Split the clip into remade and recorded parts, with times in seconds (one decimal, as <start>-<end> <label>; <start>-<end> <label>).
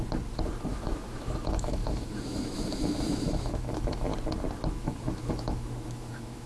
0.0-0.7 recorded; 0.7-4.1 remade; 4.1-4.7 recorded; 4.7-6.5 remade